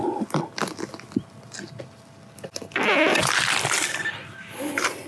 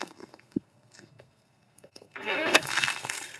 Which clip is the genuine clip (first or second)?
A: first